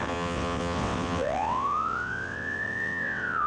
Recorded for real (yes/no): no